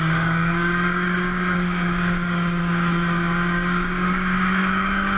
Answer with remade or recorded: remade